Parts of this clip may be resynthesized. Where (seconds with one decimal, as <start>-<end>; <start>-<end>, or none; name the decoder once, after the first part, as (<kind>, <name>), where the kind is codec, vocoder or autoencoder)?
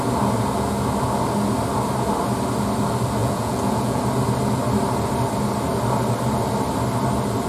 3.2-4.0 (vocoder, Vocos)